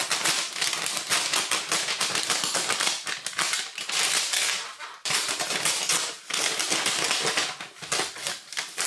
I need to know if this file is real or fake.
real